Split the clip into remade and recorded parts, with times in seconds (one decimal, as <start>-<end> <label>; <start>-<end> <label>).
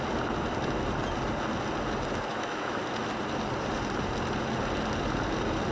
0.0-2.3 recorded; 2.3-2.8 remade; 2.8-5.7 recorded